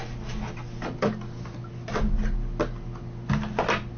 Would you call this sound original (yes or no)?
yes